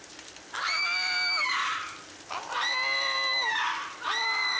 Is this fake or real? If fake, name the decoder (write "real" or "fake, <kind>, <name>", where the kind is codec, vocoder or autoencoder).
real